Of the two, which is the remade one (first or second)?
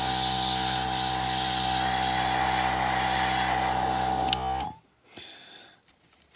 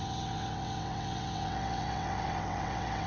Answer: second